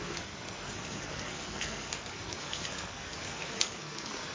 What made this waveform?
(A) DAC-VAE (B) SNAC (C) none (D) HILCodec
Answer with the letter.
B